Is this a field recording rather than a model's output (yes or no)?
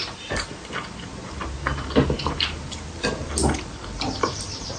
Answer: yes